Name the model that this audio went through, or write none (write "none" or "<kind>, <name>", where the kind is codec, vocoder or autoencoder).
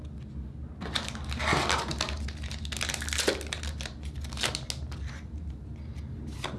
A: none